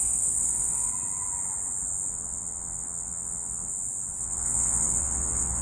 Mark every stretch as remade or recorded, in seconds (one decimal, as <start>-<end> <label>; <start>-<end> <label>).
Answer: 0.0-0.9 remade; 0.9-2.1 recorded; 2.1-3.7 remade; 3.7-4.2 recorded; 4.2-5.6 remade